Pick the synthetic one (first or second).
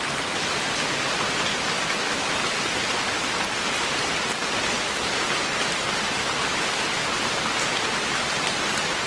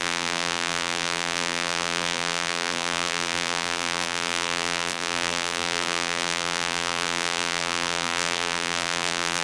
second